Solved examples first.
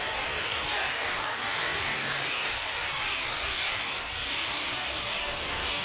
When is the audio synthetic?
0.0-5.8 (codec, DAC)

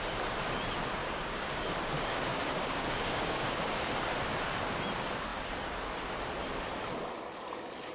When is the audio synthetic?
1.0-1.6 (codec, DAC); 2.1-3.9